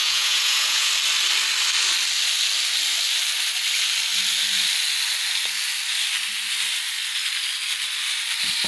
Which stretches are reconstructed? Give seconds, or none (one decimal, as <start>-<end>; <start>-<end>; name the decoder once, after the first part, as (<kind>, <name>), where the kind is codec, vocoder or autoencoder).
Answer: 0.0-0.9 (vocoder, Vocos)